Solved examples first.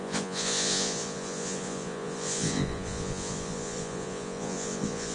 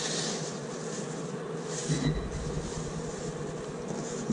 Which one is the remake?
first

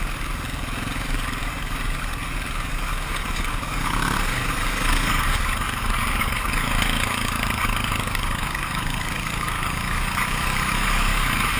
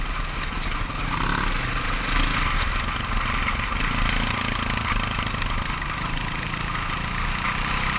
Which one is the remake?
first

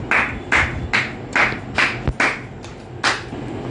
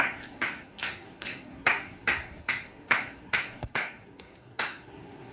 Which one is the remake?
second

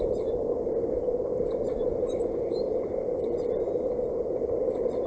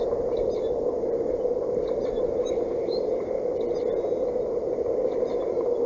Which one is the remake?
first